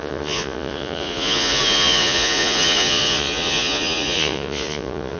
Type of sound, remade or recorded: remade